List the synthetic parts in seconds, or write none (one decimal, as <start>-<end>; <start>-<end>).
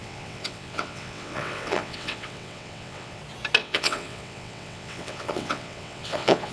0.0-3.2; 3.6-6.5